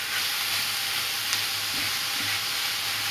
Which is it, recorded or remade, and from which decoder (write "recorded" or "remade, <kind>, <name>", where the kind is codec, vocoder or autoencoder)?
recorded